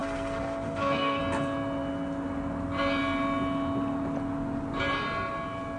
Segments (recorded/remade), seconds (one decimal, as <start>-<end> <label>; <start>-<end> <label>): 0.0-1.2 remade; 1.2-5.8 recorded